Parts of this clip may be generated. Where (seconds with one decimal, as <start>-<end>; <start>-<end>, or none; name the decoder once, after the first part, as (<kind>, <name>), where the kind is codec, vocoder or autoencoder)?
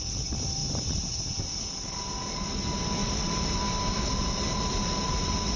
0.6-1.7 (vocoder, BigVGAN v2); 3.0-3.6